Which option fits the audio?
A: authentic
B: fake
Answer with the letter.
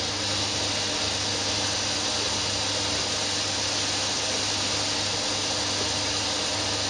A